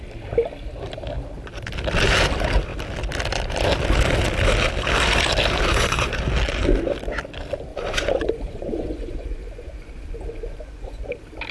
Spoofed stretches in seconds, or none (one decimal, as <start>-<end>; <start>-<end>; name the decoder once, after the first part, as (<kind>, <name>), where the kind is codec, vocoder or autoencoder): 5.7-6.2 (vocoder, Vocos); 7.7-11.0